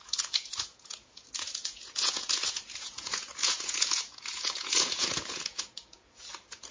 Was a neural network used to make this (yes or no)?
yes